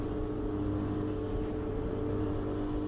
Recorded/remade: recorded